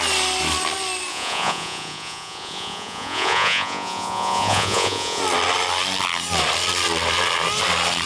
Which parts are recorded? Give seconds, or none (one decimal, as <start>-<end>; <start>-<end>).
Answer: 0.0-1.1; 5.2-8.1

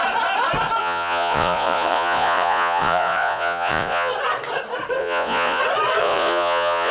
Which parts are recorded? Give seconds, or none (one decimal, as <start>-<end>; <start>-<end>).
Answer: 0.0-0.8; 4.1-5.0; 5.6-6.0

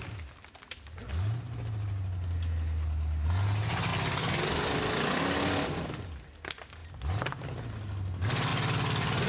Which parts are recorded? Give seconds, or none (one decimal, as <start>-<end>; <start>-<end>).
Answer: 0.0-9.3

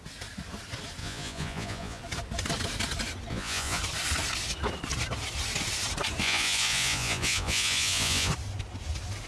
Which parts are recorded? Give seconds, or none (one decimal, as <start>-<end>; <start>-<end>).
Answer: 0.0-1.0; 2.0-3.3; 3.8-6.2; 8.3-9.3

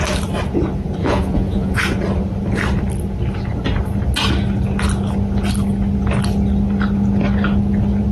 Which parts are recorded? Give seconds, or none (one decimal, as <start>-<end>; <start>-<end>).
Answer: 0.0-1.0; 1.8-8.1

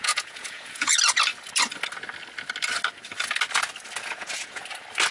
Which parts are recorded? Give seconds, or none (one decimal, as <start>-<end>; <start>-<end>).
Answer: 0.9-4.0; 4.6-5.1

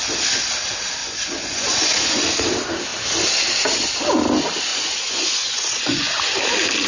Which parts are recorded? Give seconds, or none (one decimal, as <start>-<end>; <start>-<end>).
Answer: 0.0-1.0; 2.2-4.7; 6.2-6.9